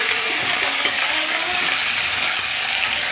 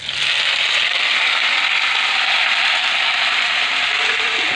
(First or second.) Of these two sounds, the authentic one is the second